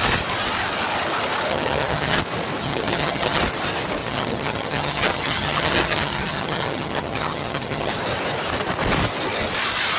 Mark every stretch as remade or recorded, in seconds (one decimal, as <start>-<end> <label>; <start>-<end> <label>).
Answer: 0.0-1.5 recorded; 1.5-2.2 remade; 2.2-2.6 recorded; 2.6-3.4 remade; 3.4-4.0 recorded; 4.0-7.9 remade; 7.9-10.0 recorded